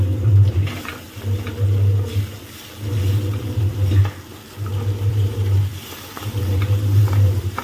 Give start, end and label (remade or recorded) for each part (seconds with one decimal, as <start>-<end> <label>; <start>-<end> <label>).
0.0-0.6 remade; 0.6-3.6 recorded; 3.6-4.0 remade; 4.0-5.1 recorded; 5.1-5.7 remade; 5.7-6.4 recorded; 6.4-7.6 remade